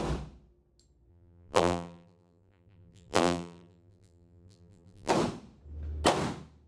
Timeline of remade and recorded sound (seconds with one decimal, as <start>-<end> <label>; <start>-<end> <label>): 0.0-1.1 recorded; 1.1-5.1 remade; 5.1-6.7 recorded